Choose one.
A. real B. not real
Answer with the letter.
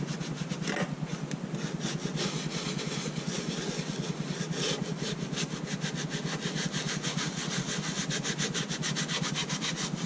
A